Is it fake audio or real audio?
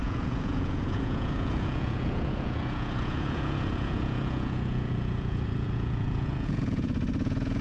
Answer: fake